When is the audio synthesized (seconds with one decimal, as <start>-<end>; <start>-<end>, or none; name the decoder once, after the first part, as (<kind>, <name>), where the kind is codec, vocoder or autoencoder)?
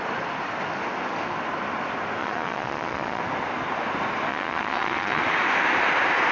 2.2-3.2 (vocoder, Vocos); 4.3-5.2